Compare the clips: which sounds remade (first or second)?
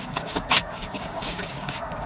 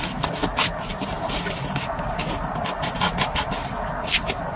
first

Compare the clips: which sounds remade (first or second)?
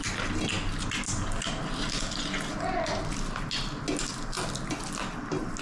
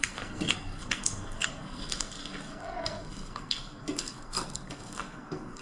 second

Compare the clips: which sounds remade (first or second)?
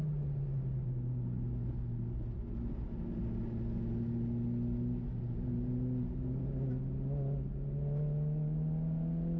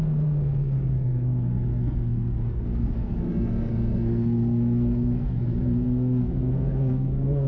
second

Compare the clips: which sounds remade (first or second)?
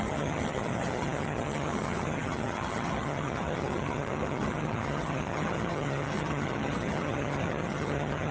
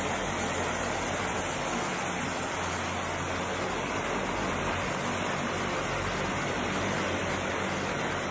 first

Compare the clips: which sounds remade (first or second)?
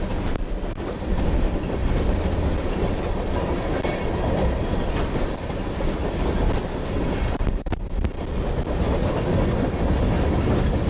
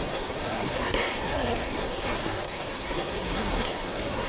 second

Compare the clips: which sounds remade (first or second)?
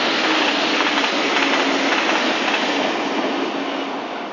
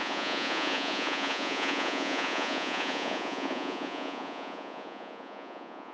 second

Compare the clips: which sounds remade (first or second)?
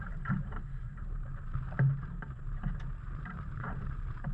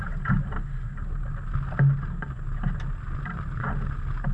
first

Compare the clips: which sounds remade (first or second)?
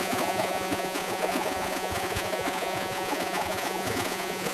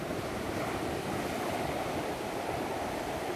first